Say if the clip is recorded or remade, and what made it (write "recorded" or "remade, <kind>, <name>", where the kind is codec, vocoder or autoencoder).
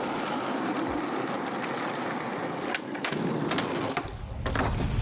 recorded